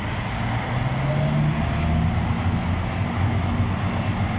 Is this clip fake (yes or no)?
no